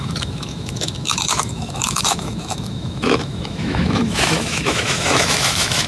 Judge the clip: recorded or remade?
remade